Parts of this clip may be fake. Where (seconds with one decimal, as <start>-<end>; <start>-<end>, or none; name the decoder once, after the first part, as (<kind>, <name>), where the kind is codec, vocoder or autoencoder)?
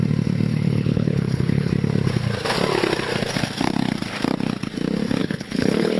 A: 0.5-1.7 (codec, HILCodec); 5.2-6.0